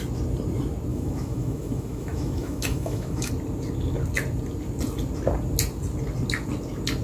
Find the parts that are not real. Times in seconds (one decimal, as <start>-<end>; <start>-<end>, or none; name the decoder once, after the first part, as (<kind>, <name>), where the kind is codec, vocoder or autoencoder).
0.9-3.3 (autoencoder, DAC-VAE)